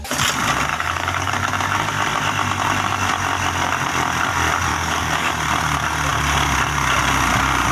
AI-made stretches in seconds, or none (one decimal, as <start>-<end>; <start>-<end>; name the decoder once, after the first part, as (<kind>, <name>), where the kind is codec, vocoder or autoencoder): 0.7-1.3 (codec, DAC); 4.7-5.3